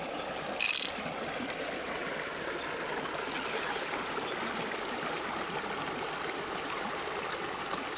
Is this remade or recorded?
recorded